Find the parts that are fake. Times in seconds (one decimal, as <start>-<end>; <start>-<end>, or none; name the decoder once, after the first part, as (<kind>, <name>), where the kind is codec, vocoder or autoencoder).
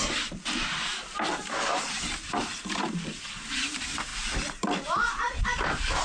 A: none